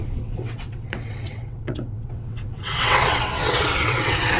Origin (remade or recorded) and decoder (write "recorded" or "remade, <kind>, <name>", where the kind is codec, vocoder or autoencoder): remade, vocoder, WaveNeXt